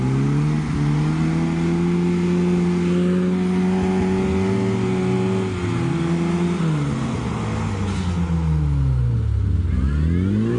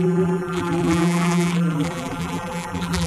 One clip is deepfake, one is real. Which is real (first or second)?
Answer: first